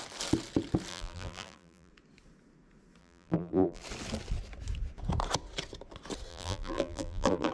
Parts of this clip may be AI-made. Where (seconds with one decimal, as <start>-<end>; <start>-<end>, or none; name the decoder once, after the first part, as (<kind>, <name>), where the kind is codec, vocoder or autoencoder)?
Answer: 0.9-1.9 (vocoder, BigVGAN v2); 3.0-3.8; 6.3-7.5